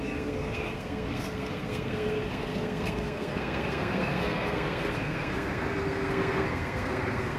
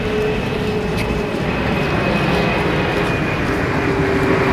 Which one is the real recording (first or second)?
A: second